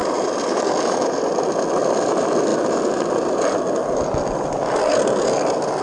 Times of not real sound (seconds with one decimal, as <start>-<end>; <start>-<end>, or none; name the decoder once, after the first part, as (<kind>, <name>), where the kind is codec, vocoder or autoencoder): none